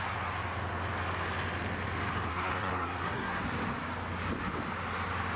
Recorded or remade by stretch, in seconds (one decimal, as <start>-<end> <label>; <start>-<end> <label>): 0.0-2.3 recorded; 2.3-3.4 remade; 3.4-5.4 recorded